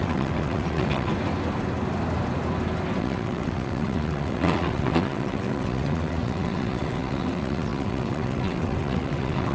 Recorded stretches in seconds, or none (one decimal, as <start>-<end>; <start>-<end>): 1.1-3.0